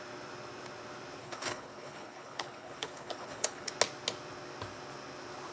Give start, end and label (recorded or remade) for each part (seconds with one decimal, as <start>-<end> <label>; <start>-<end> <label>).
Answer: 0.0-1.2 recorded; 1.2-3.7 remade; 3.7-5.5 recorded